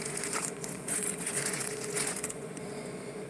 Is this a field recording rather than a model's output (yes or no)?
no